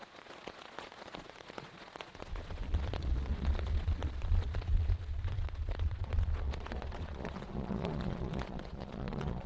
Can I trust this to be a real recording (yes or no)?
no